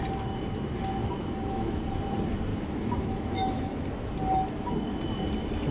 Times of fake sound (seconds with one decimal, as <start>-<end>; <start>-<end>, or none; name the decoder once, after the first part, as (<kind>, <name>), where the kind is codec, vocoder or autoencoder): 1.0-1.8 (autoencoder, DAC-VAE); 2.5-4.1